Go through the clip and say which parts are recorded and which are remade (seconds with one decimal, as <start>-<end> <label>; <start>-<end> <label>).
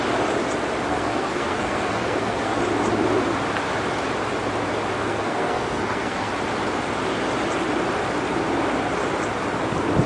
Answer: 0.0-0.9 recorded; 0.9-2.6 remade; 2.6-5.0 recorded; 5.0-6.3 remade; 6.3-10.1 recorded